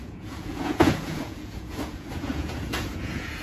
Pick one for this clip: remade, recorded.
remade